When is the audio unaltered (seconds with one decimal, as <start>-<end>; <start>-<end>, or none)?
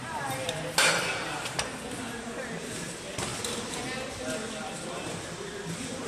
0.0-2.6; 3.3-4.9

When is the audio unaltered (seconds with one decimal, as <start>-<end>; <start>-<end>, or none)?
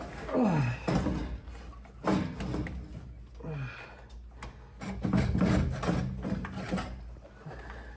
0.0-8.0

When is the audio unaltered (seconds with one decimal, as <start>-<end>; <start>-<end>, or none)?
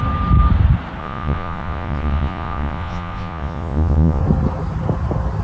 0.0-1.0; 4.2-5.4